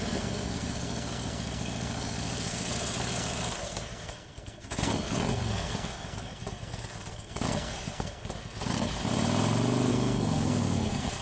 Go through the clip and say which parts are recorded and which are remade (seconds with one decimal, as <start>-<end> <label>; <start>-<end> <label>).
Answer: 0.0-8.9 remade; 8.9-9.9 recorded; 9.9-11.2 remade